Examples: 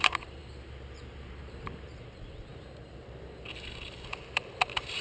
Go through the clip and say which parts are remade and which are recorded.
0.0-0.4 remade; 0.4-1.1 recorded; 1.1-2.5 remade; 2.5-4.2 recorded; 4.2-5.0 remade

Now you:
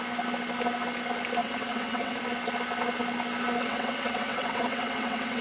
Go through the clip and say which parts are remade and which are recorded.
0.0-1.4 recorded; 1.4-2.2 remade; 2.2-3.6 recorded; 3.6-5.4 remade

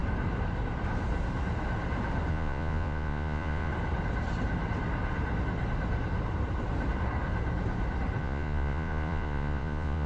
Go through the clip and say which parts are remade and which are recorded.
0.0-2.3 recorded; 2.3-3.7 remade; 3.7-8.2 recorded; 8.2-10.1 remade

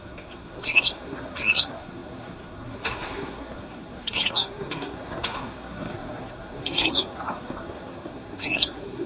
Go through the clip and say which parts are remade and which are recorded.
0.0-9.1 remade

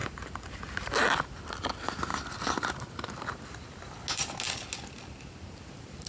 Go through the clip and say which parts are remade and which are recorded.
0.0-0.9 remade; 0.9-6.1 recorded

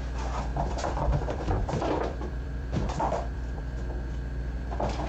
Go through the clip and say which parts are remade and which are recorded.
0.0-0.5 recorded; 0.5-3.6 remade; 3.6-5.1 recorded